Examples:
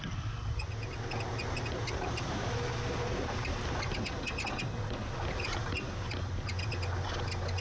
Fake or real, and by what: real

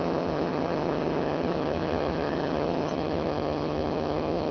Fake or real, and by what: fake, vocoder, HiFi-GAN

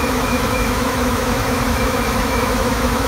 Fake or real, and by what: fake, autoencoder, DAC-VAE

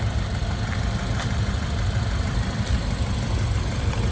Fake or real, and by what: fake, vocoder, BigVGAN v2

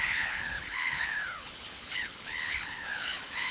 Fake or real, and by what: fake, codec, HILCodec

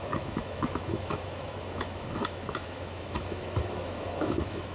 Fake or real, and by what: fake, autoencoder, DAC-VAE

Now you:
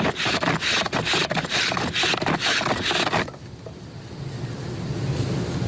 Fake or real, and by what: real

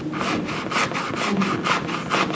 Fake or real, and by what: real